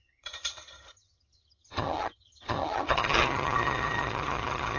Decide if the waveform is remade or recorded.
remade